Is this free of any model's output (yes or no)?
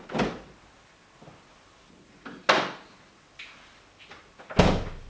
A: yes